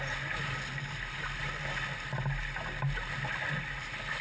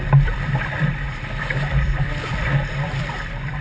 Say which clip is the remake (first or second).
second